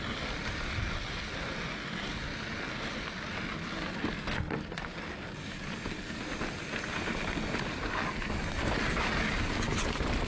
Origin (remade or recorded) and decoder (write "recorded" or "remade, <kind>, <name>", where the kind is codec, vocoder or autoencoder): recorded